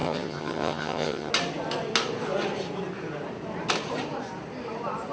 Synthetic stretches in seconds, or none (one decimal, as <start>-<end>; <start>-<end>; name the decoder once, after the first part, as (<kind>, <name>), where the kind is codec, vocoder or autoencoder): 0.0-1.3 (vocoder, HiFi-GAN)